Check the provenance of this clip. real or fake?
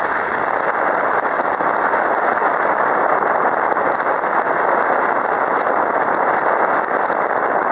real